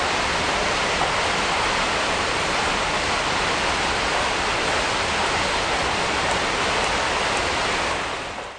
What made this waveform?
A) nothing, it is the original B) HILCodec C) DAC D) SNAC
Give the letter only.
A